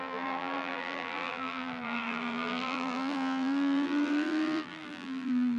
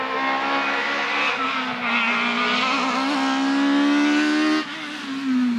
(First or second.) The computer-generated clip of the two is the first